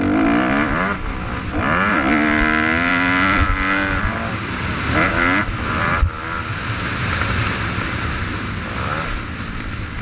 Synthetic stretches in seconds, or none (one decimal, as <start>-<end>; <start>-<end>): none